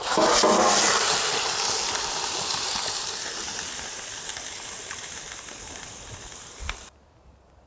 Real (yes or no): yes